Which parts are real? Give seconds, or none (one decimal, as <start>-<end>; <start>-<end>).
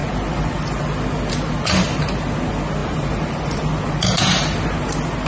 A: 0.0-2.8; 3.7-5.3